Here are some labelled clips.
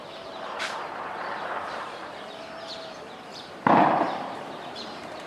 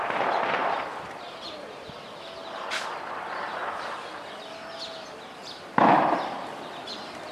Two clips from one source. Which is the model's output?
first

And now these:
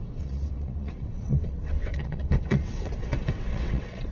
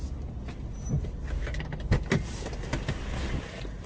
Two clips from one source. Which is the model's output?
first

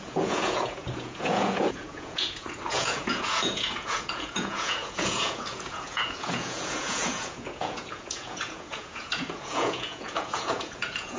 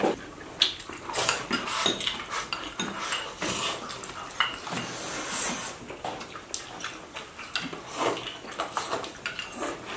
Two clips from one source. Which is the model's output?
first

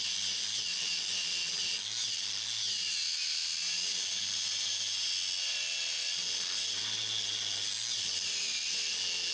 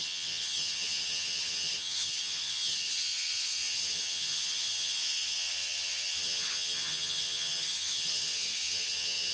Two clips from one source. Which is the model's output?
second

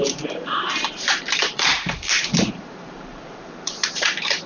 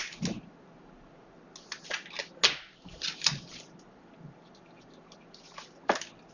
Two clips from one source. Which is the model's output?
first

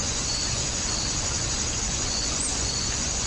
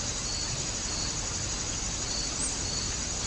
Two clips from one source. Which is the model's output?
first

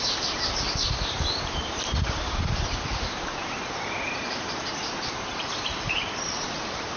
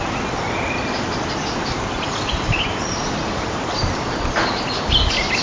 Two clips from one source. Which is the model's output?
first